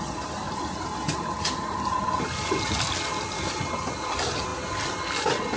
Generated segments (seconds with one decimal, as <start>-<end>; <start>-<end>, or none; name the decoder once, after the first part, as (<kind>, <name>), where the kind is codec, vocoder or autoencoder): none